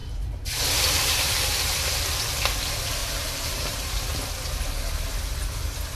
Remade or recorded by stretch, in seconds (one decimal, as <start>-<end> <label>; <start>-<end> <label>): 0.0-1.9 remade; 1.9-3.0 recorded; 3.0-4.0 remade; 4.0-6.0 recorded